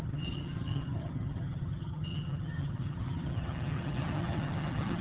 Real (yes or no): no